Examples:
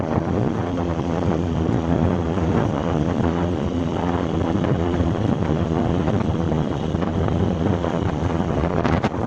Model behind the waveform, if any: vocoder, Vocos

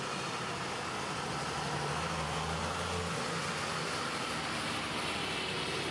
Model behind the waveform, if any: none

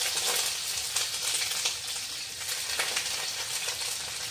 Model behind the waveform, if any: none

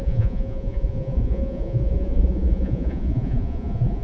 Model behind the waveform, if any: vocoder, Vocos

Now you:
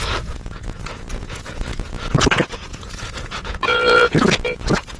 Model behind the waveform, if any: vocoder, Vocos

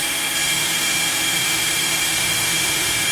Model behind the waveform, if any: autoencoder, DAC-VAE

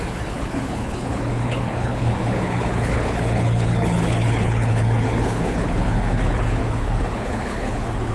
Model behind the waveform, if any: codec, HILCodec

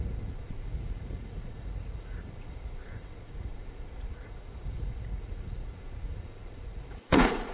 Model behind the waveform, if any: vocoder, Vocos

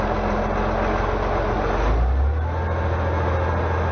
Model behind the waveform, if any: none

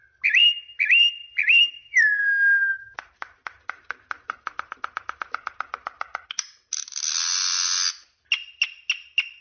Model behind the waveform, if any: none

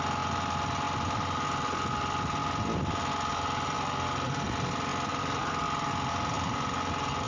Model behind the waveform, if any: none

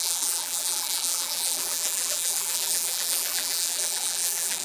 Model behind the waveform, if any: vocoder, BigVGAN v2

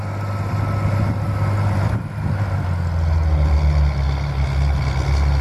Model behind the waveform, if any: none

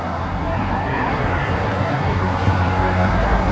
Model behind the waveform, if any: codec, SNAC